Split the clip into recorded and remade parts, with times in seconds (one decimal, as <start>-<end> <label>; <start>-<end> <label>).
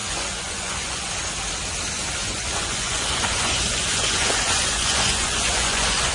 0.0-1.1 remade; 1.1-2.2 recorded; 2.2-6.1 remade